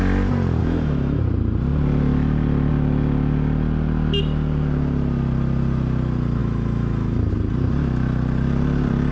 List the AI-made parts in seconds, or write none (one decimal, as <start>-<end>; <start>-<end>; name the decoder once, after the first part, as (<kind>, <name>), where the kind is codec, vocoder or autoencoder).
0.6-1.2 (autoencoder, DAC-VAE); 6.4-7.3